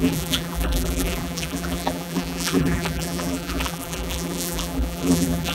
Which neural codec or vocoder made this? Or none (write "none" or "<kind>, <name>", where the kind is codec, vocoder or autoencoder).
vocoder, BigVGAN v2